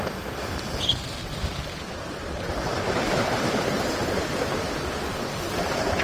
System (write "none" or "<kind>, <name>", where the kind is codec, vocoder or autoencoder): vocoder, BigVGAN v2